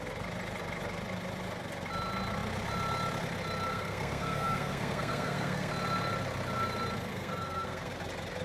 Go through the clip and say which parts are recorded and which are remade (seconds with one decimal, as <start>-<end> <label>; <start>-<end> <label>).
0.0-3.7 recorded; 3.7-5.7 remade; 5.7-7.1 recorded; 7.1-7.9 remade; 7.9-8.4 recorded